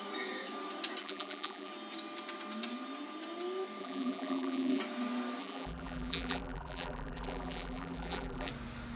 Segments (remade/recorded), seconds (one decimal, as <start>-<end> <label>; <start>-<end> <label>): 0.0-1.0 recorded; 1.0-1.7 remade; 1.7-3.8 recorded; 3.8-4.8 remade; 4.8-5.4 recorded; 5.4-8.5 remade; 8.5-9.0 recorded